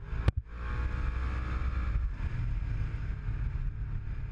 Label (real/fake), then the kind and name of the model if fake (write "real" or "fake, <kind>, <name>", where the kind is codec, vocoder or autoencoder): real